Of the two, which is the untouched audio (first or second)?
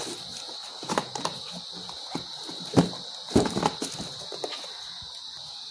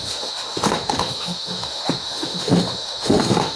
first